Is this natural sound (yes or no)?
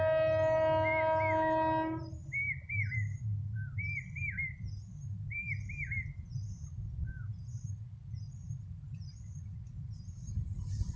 yes